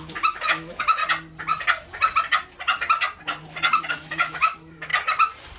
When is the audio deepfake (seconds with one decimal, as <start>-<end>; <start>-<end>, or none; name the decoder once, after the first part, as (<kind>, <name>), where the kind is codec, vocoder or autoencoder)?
0.0-1.0 (autoencoder, DAC-VAE); 3.9-4.9